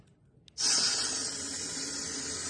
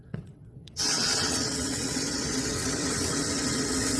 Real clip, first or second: first